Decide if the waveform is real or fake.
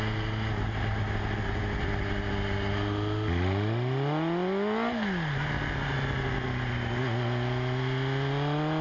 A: real